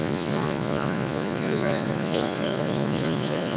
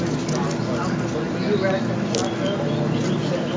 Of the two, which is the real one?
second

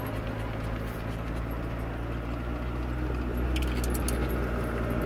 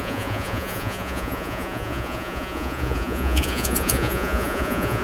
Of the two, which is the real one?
first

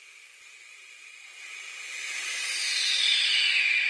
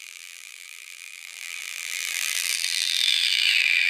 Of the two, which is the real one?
first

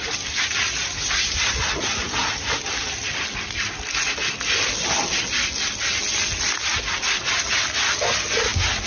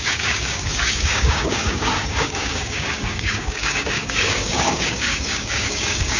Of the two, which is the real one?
first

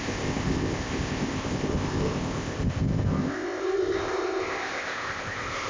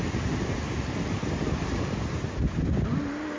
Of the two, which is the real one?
second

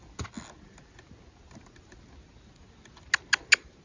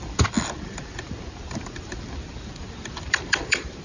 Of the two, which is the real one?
first